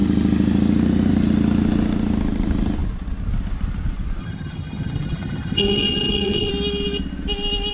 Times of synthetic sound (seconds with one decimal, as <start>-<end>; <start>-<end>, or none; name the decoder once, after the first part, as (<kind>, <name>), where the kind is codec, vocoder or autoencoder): 4.2-6.5 (vocoder, HiFi-GAN)